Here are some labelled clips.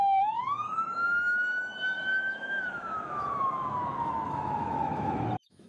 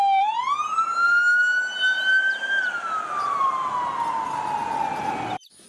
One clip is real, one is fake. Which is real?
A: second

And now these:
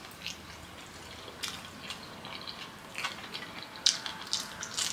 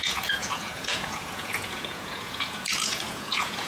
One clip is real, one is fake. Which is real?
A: first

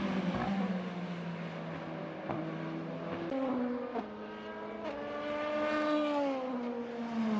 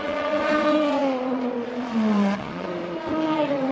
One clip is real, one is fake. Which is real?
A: first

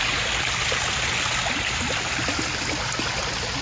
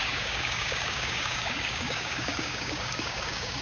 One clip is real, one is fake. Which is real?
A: first